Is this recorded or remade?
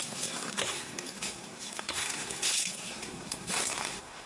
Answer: remade